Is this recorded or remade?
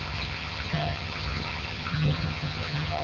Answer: remade